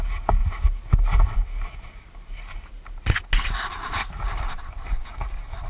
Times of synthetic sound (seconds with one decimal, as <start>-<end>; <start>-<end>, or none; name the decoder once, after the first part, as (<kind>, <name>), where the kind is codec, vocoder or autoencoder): none